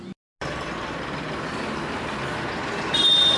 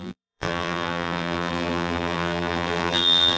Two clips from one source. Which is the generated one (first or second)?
second